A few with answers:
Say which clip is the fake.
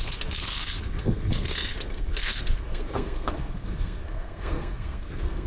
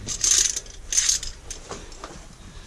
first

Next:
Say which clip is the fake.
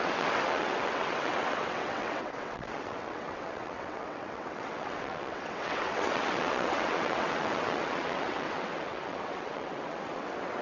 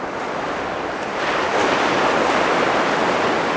first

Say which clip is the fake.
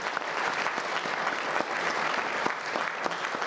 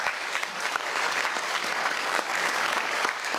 second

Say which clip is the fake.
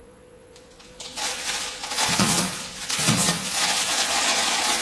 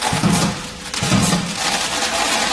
first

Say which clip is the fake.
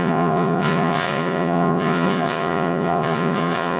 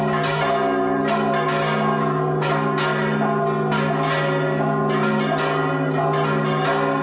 first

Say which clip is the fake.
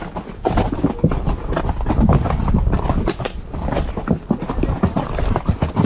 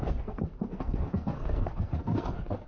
second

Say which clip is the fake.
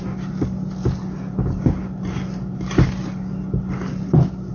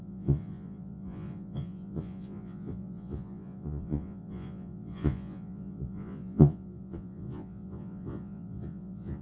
second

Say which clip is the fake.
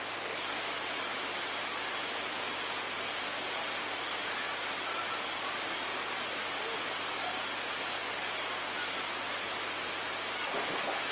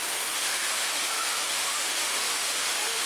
second